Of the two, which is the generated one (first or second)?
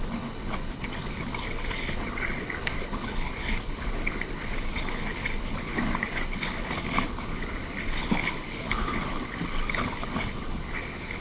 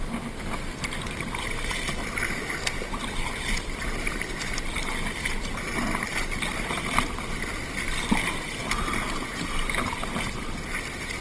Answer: first